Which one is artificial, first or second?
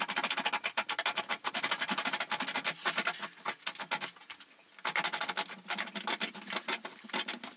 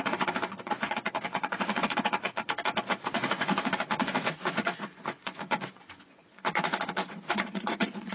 second